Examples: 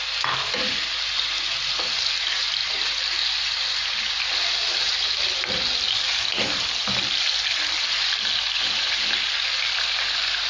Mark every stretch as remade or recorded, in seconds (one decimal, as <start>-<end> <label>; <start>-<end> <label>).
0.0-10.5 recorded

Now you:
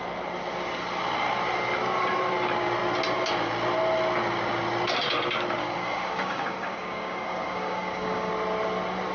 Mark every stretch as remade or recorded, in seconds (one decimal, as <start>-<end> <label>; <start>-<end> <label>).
0.0-5.6 recorded; 5.6-8.3 remade; 8.3-9.1 recorded

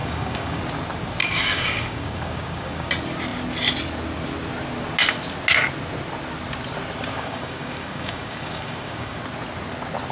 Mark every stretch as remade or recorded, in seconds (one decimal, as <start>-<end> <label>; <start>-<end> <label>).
0.0-0.6 remade; 0.6-1.2 recorded; 1.2-2.9 remade; 2.9-7.1 recorded; 7.1-9.2 remade; 9.2-10.1 recorded